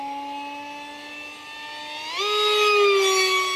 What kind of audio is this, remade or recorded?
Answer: recorded